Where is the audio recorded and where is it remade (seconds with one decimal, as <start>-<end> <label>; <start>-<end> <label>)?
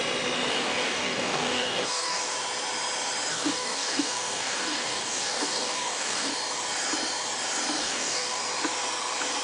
0.0-0.5 recorded; 0.5-2.2 remade; 2.2-3.3 recorded; 3.3-6.3 remade; 6.3-7.8 recorded; 7.8-8.4 remade; 8.4-9.4 recorded